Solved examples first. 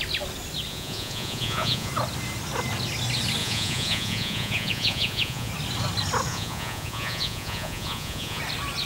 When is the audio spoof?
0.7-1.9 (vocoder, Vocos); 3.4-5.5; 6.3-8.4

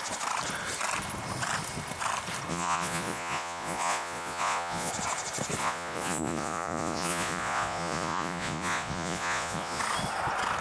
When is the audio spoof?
2.5-4.9 (vocoder, Vocos); 5.6-9.8

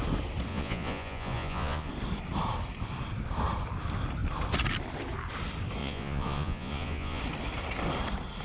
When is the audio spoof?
0.5-1.9 (vocoder, Vocos); 5.8-7.2

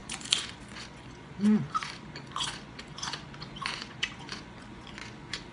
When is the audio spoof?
0.0-5.5 (vocoder, Vocos)

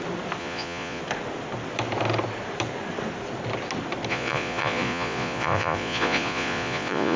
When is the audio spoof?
0.4-1.0 (vocoder, Vocos); 4.1-7.2

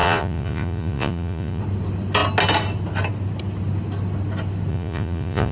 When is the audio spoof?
0.0-1.6 (vocoder, Vocos); 4.7-5.5